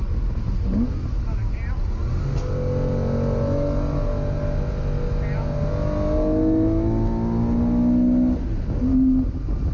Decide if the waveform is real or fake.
real